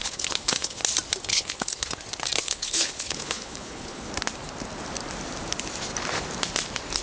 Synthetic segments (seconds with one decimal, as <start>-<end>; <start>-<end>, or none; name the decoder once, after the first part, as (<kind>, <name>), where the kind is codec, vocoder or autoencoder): 0.0-0.8 (codec, HILCodec); 1.3-1.9; 2.4-4.1